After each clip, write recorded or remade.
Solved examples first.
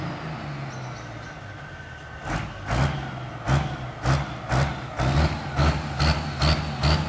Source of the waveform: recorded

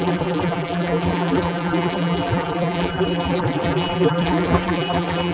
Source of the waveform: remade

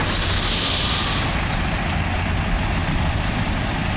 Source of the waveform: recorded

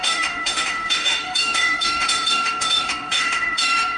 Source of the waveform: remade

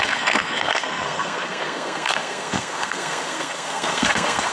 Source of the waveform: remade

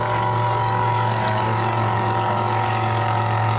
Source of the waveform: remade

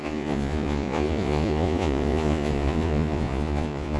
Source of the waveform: remade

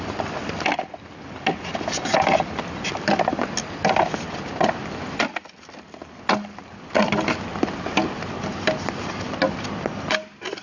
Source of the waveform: recorded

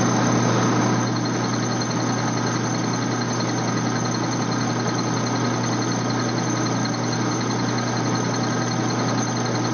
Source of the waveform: recorded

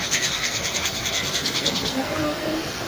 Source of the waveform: remade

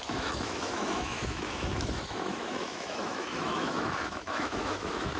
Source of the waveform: remade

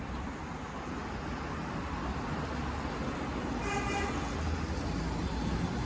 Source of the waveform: recorded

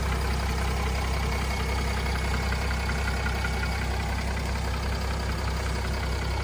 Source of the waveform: recorded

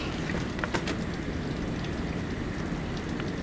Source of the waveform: recorded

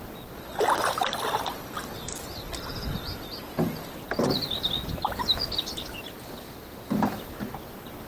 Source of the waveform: recorded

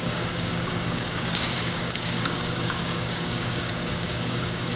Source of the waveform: remade